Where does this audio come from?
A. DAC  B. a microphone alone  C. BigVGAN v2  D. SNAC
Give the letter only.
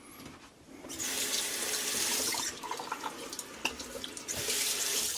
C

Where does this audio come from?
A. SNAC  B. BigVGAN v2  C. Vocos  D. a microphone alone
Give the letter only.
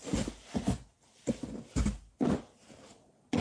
D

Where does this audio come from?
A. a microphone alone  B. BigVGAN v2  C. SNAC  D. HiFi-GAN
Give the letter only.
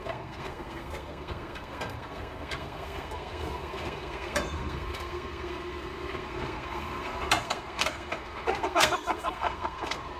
C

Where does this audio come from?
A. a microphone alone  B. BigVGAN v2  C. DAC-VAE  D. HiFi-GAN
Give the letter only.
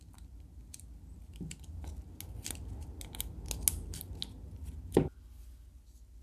A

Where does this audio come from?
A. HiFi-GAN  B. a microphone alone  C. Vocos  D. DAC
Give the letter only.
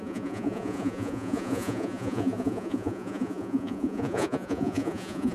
C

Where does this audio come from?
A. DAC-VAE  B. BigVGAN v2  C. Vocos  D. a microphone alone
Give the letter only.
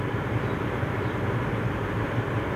B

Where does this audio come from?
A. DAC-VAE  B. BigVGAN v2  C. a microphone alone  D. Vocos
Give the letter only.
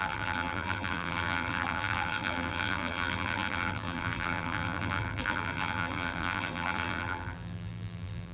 B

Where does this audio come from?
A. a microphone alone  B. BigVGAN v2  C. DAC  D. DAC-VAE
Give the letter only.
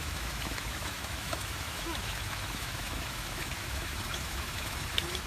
D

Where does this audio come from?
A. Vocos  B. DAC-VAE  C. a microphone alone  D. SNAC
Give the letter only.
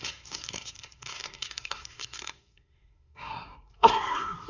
D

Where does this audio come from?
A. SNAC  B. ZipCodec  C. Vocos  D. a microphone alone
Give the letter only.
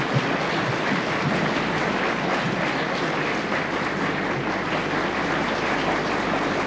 D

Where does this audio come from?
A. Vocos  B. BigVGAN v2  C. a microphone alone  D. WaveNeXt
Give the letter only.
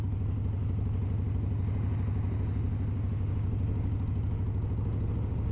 C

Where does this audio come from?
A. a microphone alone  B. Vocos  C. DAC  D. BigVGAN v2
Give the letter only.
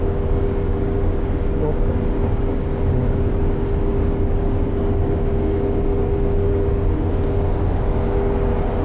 C